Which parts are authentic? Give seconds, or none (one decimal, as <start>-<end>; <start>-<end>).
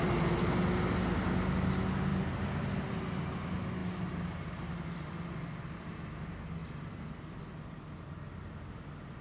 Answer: 0.0-9.2